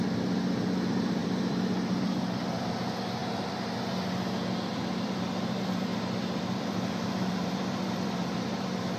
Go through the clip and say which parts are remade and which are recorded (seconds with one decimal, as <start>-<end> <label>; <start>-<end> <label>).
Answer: 0.0-3.2 remade; 3.2-4.8 recorded; 4.8-9.0 remade